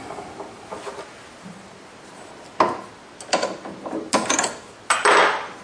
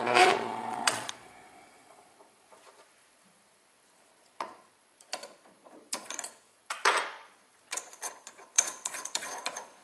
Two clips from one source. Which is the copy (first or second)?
second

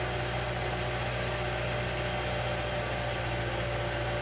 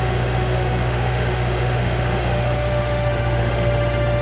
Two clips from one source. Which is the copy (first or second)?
second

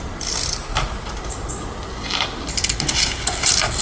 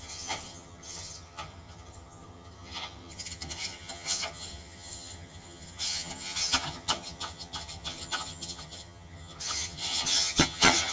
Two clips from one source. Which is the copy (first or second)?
second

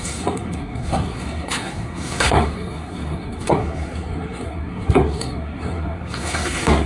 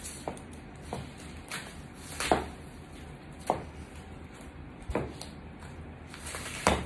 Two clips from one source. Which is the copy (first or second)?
first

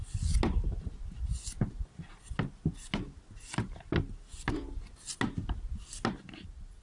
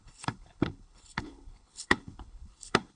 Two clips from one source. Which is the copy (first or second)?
second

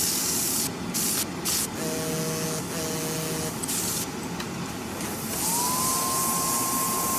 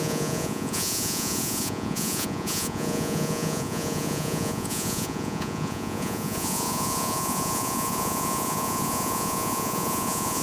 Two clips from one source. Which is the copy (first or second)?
second